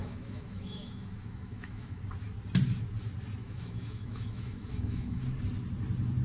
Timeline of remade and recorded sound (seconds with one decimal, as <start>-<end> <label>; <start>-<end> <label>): 0.0-2.0 remade; 2.0-3.4 recorded; 3.4-5.2 remade; 5.2-6.2 recorded